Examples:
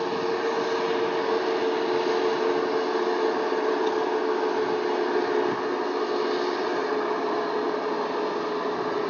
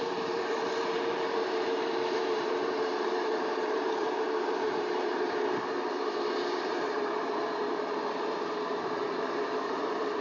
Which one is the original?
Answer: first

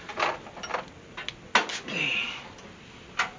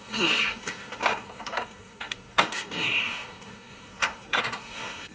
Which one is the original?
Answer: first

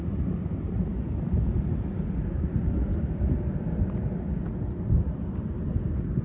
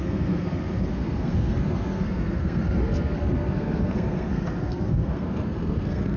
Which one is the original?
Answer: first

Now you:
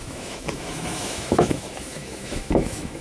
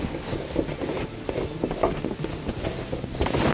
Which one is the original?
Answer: second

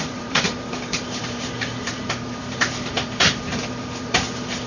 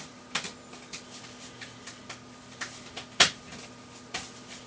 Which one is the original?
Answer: second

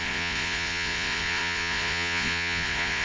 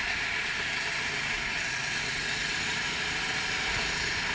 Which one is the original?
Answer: second